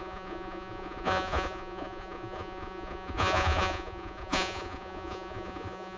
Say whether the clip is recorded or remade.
remade